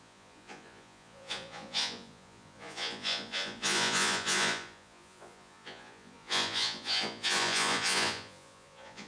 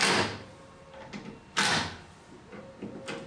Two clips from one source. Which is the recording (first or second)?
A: second